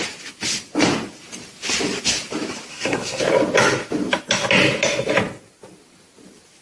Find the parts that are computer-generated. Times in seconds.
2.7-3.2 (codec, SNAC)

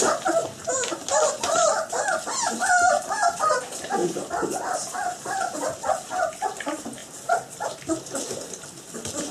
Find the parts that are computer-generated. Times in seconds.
0.4-3.6 (vocoder, BigVGAN v2); 4.0-5.8

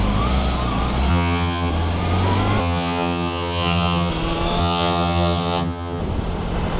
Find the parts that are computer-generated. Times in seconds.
1.1-1.7 (vocoder, HiFi-GAN); 2.6-4.1; 4.6-6.0

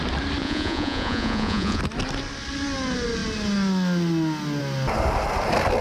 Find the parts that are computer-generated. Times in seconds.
0.4-1.8 (vocoder, Vocos)

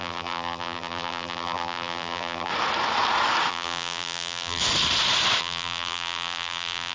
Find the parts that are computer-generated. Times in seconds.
0.0-2.5 (vocoder, BigVGAN v2); 3.5-4.6; 5.4-6.9

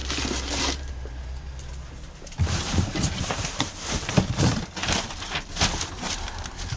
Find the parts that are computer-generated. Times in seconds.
0.0-4.1 (vocoder, BigVGAN v2)

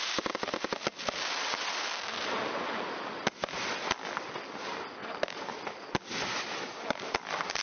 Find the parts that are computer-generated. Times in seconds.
none

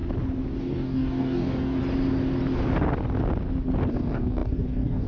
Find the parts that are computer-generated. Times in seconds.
0.6-1.8 (codec, DAC); 3.9-5.1